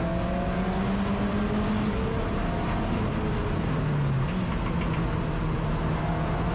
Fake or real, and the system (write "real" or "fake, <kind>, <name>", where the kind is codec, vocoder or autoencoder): real